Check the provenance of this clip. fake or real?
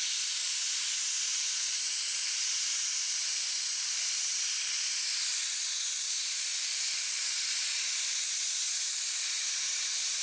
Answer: real